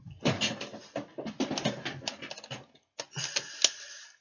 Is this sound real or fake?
real